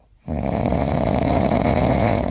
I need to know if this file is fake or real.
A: fake